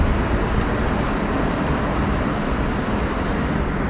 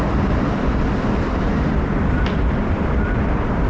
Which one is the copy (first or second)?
second